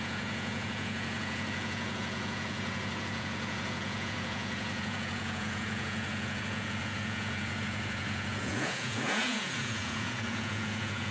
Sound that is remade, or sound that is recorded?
remade